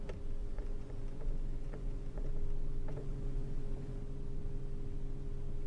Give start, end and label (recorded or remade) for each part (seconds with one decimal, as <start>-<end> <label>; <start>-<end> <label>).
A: 0.0-0.4 recorded; 0.4-2.3 remade; 2.3-2.9 recorded; 2.9-4.0 remade; 4.0-5.7 recorded